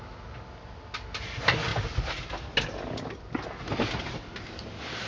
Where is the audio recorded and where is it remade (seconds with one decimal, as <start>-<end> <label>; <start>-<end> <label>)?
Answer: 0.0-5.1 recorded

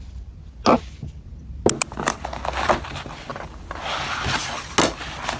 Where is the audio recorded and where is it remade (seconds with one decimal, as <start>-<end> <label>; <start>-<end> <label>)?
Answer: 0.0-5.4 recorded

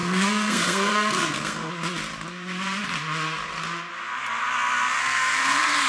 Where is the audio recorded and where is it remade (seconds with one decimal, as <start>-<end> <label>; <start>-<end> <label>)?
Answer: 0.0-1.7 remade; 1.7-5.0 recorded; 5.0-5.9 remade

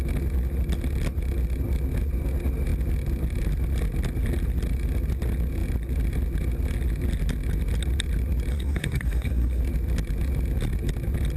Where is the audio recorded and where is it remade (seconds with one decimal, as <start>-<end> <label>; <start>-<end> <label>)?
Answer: 0.0-8.5 recorded; 8.5-9.6 remade; 9.6-11.4 recorded

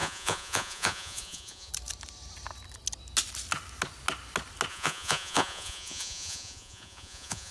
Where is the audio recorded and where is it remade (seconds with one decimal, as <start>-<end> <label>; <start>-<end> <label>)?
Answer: 0.0-1.7 remade; 1.7-4.7 recorded; 4.7-7.5 remade

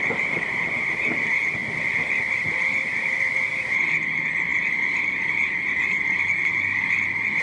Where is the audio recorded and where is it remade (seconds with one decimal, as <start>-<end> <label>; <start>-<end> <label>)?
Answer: 0.0-1.6 remade; 1.6-2.3 recorded; 2.3-7.4 remade

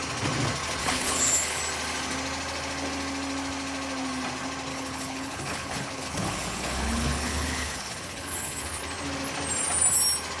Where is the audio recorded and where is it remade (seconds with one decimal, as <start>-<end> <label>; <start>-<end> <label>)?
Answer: 0.0-0.8 recorded; 0.8-1.6 remade; 1.6-4.7 recorded; 4.7-8.8 remade; 8.8-10.4 recorded